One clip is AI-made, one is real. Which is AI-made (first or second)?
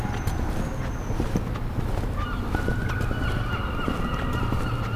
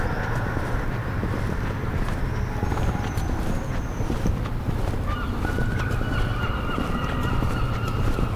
second